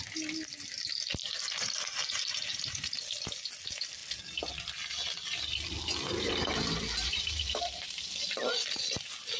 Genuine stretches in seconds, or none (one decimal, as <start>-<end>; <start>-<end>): 0.0-1.2; 3.0-7.0; 8.0-9.4